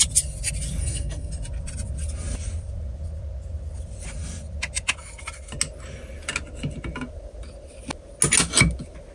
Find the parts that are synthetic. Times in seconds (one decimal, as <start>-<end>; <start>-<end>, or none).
0.8-1.3